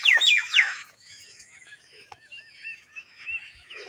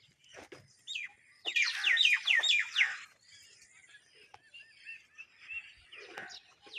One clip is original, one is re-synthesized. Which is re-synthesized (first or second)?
first